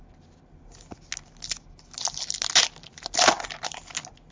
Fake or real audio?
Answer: real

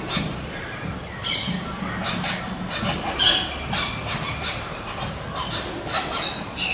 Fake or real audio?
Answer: real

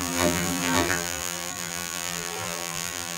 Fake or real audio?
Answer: fake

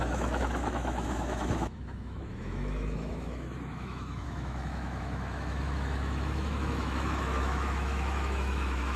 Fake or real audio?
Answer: fake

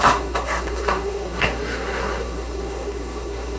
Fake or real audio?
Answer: fake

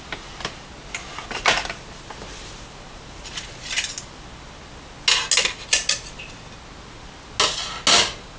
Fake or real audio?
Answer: real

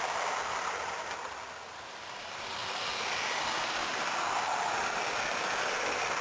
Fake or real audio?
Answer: real